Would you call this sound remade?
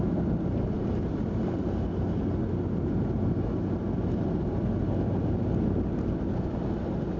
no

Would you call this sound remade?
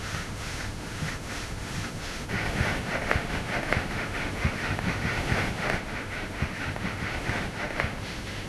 yes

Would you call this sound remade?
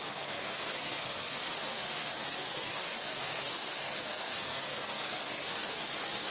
yes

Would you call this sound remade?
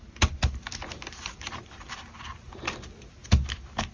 no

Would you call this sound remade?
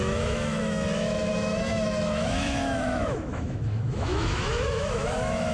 yes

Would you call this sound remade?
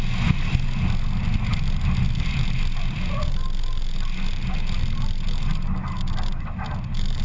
no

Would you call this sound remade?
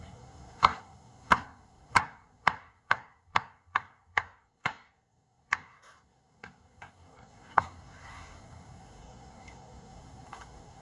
yes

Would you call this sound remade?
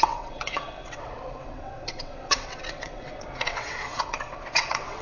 yes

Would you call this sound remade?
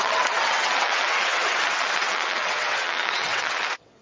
yes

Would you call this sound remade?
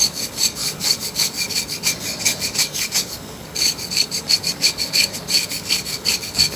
yes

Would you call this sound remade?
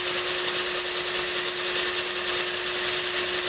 no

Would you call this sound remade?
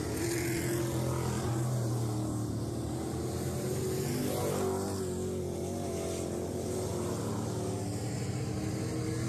no